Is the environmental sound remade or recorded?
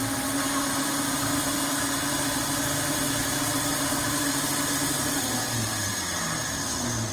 recorded